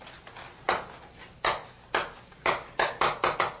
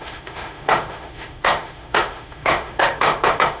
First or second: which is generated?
second